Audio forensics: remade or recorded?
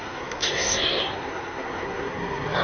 remade